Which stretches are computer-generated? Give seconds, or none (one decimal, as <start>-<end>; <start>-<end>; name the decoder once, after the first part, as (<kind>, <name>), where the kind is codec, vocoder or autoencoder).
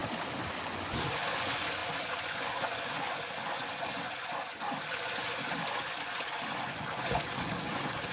0.6-8.1 (vocoder, Vocos)